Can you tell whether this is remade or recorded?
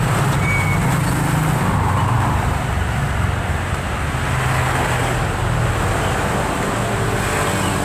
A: recorded